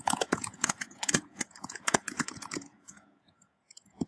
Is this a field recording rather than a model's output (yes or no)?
no